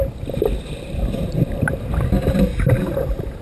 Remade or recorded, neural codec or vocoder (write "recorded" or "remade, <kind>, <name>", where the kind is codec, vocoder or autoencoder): recorded